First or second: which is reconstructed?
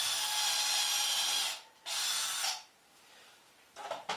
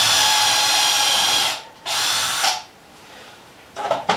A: second